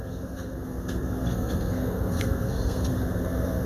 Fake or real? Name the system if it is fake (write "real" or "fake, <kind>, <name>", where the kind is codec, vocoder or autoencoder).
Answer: fake, codec, SNAC